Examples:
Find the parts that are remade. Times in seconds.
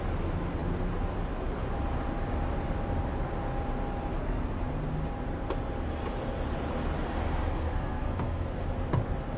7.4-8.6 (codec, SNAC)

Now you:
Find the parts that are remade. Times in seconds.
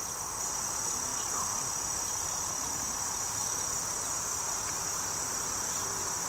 none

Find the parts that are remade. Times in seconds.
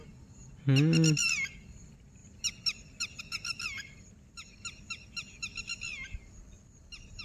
2.2-3.2 (vocoder, BigVGAN v2)